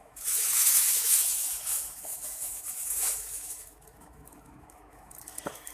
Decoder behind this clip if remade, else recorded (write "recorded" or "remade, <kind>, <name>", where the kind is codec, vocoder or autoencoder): remade, autoencoder, DAC-VAE